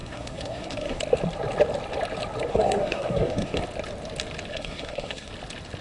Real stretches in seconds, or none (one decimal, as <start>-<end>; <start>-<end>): 1.0-2.5; 3.6-4.5; 5.3-5.8